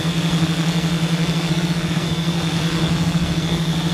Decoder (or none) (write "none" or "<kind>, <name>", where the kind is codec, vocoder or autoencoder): codec, SNAC